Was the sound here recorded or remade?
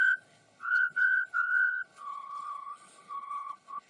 remade